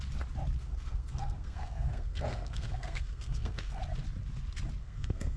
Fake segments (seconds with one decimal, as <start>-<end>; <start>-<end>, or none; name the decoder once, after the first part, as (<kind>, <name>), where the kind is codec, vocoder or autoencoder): 0.6-3.8 (codec, SNAC); 4.8-5.4